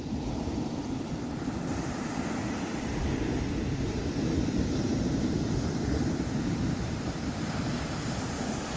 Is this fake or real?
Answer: fake